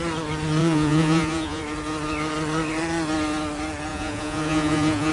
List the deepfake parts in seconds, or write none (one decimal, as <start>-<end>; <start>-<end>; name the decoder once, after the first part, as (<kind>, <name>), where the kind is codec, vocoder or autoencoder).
0.6-1.6 (vocoder, Vocos); 3.9-5.1